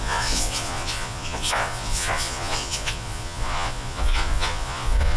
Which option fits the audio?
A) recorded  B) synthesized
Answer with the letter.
B